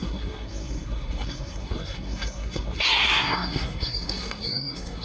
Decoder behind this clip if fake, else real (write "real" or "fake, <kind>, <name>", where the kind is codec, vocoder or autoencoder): fake, codec, SNAC